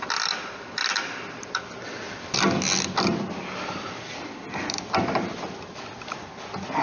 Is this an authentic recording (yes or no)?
yes